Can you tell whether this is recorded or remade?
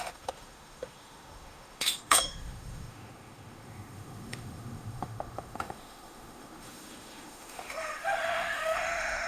remade